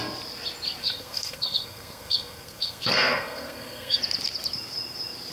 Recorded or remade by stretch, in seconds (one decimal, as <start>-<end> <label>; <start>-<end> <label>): 0.0-0.8 recorded; 0.8-4.0 remade; 4.0-5.3 recorded